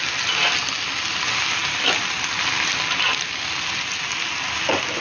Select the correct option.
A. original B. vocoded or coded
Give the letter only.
A